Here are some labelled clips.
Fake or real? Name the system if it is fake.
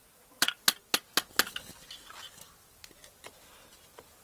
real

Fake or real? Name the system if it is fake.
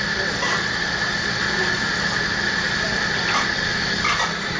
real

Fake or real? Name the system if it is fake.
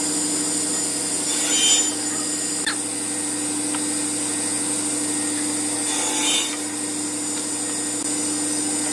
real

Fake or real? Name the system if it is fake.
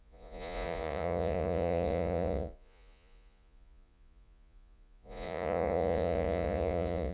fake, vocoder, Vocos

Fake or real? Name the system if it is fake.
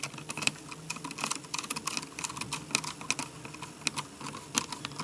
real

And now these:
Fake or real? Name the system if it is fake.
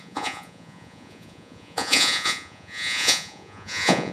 fake, vocoder, Vocos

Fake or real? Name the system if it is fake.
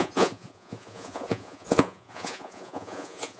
fake, vocoder, Vocos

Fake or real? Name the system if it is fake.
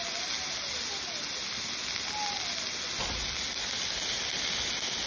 real